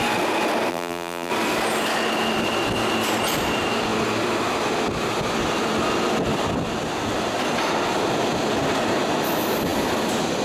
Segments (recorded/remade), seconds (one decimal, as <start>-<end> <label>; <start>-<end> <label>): 0.0-0.7 recorded; 0.7-1.3 remade; 1.3-10.4 recorded

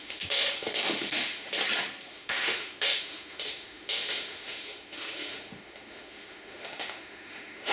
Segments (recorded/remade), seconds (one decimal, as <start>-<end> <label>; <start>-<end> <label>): 0.0-1.5 remade; 1.5-2.1 recorded; 2.1-7.7 remade

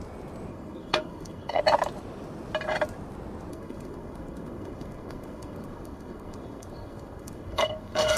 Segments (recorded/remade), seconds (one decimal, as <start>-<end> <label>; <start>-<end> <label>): 0.0-0.5 recorded; 0.5-1.6 remade; 1.6-3.5 recorded; 3.5-8.2 remade

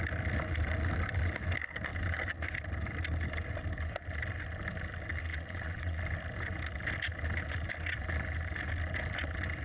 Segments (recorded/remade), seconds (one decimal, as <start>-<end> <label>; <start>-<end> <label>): 0.0-5.3 recorded; 5.3-6.0 remade; 6.0-9.6 recorded

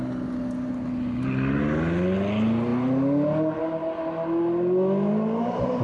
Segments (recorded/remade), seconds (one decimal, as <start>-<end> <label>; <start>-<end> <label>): 0.0-5.8 recorded

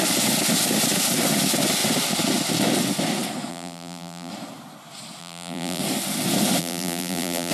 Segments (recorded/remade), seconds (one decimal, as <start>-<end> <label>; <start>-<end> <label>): 0.0-3.5 recorded; 3.5-4.3 remade; 4.3-5.2 recorded; 5.2-5.8 remade; 5.8-6.6 recorded; 6.6-7.5 remade

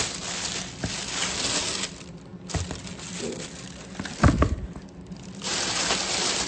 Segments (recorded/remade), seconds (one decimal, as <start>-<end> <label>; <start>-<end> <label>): 0.0-6.5 recorded

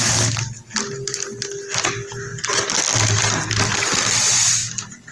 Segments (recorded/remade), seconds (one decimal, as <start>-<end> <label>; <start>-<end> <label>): 0.0-5.1 recorded